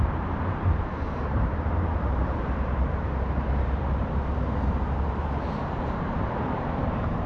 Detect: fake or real fake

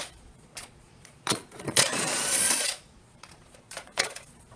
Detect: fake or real fake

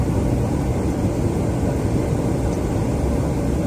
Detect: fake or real real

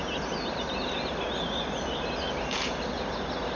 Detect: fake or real real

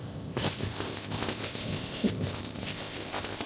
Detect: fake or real fake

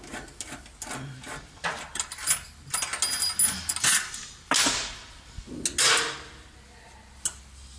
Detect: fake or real real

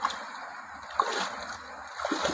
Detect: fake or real real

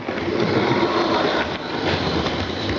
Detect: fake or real fake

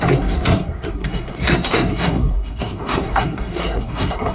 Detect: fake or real fake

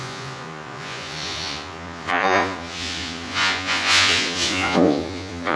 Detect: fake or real fake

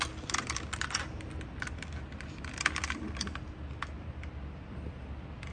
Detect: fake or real real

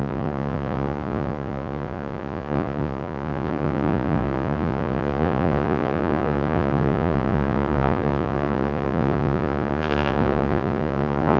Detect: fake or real fake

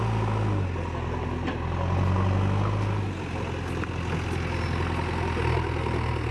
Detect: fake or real real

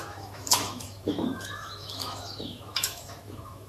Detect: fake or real fake